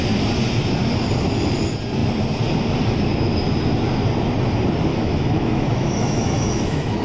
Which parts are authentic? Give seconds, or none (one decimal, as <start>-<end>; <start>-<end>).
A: 0.0-4.9